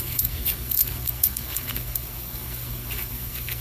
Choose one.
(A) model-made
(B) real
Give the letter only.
A